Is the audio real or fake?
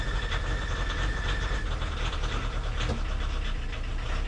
real